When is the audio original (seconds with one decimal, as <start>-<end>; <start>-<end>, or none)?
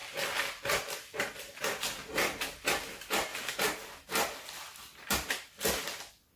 1.6-3.3; 5.3-6.4